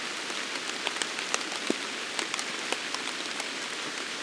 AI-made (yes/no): no